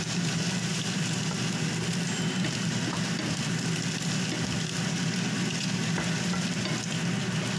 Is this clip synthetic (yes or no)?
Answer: no